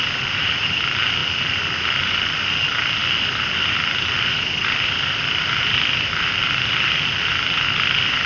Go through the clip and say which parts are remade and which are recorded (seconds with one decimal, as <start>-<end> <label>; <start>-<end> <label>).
0.0-8.3 recorded